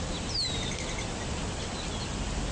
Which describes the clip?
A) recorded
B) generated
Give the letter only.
A